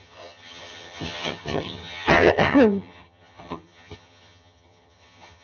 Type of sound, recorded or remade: remade